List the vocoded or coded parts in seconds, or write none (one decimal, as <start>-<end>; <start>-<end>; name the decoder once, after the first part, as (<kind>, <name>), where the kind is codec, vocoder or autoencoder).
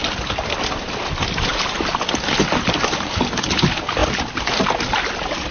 none